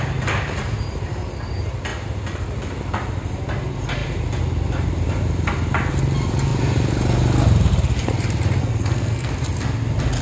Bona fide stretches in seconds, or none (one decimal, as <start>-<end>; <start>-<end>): 0.0-8.6; 9.3-10.2